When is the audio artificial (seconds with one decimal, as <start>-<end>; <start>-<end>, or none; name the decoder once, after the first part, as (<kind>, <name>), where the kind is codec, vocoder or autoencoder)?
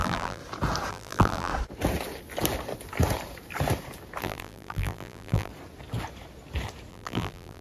0.0-0.4 (vocoder, BigVGAN v2); 0.9-1.5; 4.2-5.5; 6.9-7.6